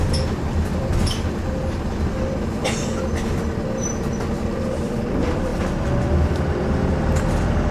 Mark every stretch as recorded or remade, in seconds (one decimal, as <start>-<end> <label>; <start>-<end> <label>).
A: 0.0-2.9 remade; 2.9-4.4 recorded; 4.4-5.5 remade; 5.5-6.0 recorded; 6.0-7.7 remade